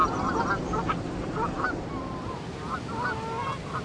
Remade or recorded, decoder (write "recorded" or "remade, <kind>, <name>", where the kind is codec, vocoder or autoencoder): recorded